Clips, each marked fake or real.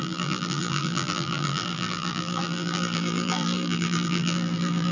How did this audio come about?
fake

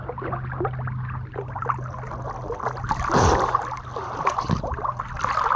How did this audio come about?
real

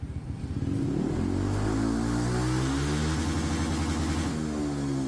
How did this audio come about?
real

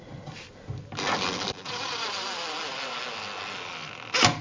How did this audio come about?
real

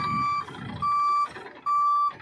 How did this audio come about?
real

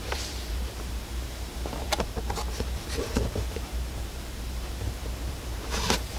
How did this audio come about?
fake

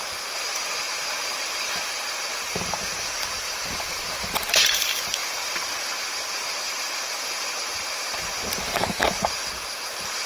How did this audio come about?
fake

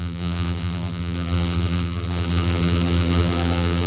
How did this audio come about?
fake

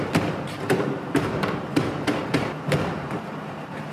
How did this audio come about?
fake